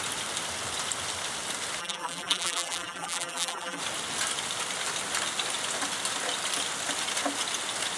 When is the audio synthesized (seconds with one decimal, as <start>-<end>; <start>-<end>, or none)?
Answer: 1.8-3.8